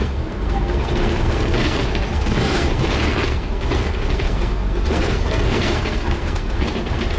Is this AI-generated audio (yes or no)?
yes